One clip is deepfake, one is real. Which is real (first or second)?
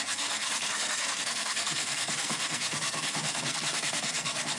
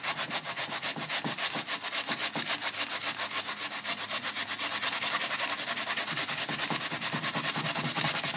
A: second